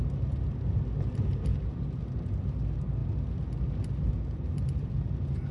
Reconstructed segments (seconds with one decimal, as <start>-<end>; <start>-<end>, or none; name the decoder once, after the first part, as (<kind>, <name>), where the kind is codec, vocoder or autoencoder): none